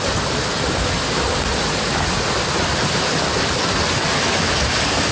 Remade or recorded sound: recorded